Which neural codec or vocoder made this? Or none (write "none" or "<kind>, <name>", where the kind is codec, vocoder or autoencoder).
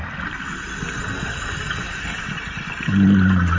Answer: none